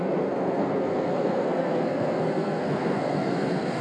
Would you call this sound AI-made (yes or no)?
yes